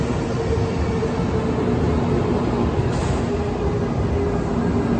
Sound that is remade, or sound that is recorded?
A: recorded